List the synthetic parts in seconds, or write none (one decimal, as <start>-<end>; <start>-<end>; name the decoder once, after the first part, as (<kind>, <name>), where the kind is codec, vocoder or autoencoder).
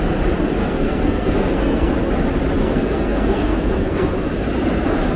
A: 0.6-1.9 (codec, SNAC); 2.6-4.1